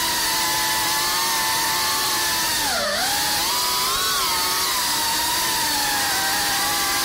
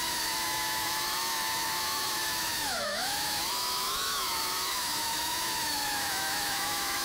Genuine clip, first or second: first